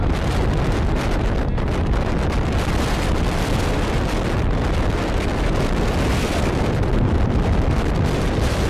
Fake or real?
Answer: real